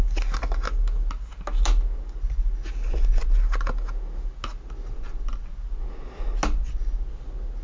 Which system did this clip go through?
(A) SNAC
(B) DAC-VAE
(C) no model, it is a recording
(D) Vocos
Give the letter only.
C